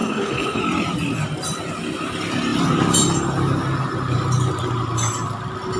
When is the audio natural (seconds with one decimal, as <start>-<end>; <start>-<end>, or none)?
0.6-5.8

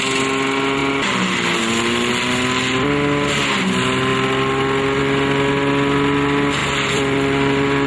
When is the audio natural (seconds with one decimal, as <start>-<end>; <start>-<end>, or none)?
0.0-6.6

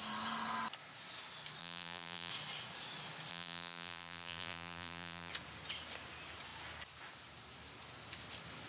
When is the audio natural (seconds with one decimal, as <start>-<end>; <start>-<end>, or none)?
0.0-1.6; 2.3-3.3; 5.3-8.7

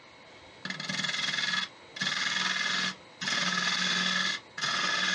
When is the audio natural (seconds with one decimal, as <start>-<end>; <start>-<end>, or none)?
0.0-5.1

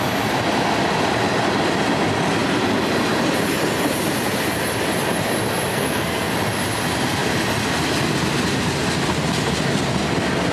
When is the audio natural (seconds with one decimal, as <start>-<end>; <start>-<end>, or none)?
0.0-5.7; 6.3-10.5

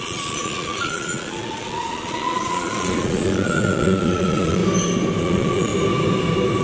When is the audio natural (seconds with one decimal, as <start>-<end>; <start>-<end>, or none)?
4.6-5.2; 5.7-6.6

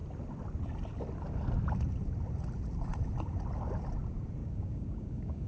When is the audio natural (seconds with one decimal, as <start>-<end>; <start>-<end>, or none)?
0.0-4.4

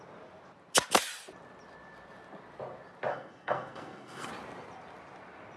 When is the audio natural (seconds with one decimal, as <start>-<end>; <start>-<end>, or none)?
0.0-3.1; 4.3-5.6